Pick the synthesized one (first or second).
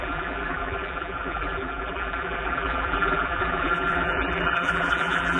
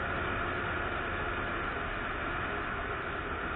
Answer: first